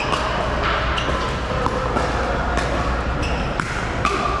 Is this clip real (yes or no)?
yes